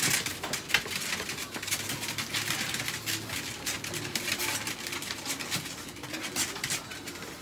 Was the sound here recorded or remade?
recorded